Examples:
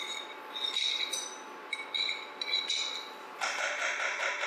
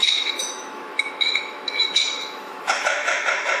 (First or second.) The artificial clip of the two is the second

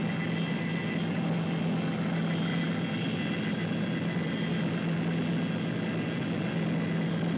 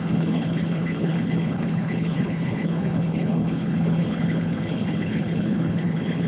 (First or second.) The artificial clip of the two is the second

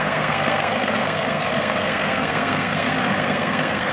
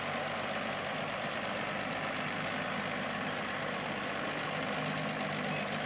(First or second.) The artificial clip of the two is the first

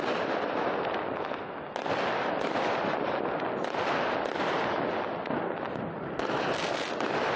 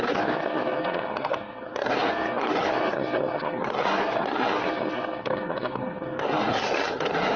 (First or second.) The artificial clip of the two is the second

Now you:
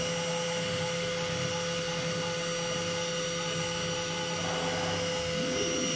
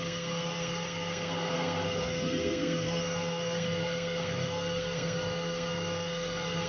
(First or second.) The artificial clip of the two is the second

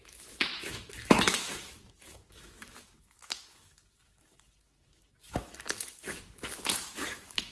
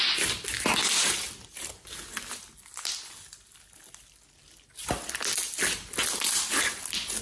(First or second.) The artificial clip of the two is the first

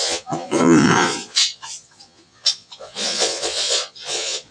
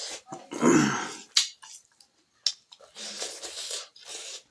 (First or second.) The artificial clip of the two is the first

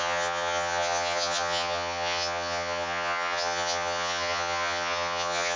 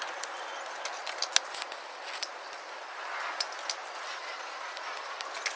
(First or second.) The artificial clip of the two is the first